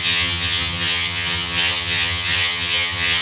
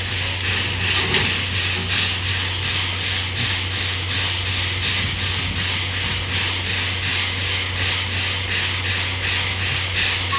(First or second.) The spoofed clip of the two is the first